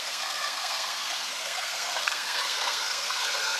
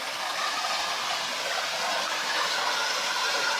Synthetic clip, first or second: first